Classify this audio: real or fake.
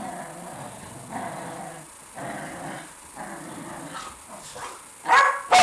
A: real